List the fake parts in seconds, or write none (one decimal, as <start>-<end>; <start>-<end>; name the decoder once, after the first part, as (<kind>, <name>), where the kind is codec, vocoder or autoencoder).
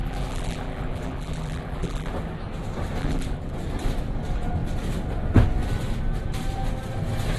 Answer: 0.0-2.1 (vocoder, BigVGAN v2); 3.0-3.5